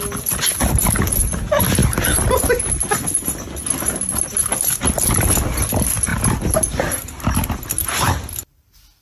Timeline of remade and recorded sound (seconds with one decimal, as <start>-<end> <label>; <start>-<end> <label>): 0.0-1.8 recorded; 1.8-2.7 remade; 2.7-9.0 recorded